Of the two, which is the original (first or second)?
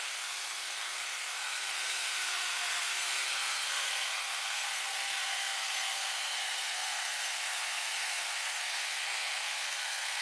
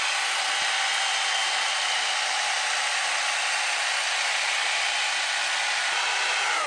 second